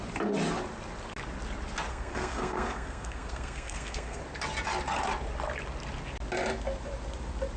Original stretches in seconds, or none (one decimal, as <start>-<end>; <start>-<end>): 0.0-1.9; 4.2-7.6